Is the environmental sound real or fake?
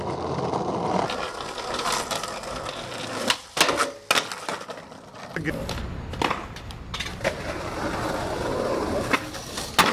real